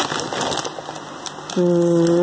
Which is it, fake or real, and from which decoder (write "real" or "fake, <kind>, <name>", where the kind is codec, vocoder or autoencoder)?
real